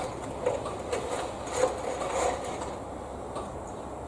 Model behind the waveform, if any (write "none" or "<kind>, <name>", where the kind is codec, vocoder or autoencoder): none